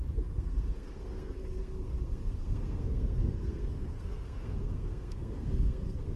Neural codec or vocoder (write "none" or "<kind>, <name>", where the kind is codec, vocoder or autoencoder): codec, SNAC